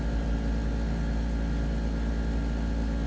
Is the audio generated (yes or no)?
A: no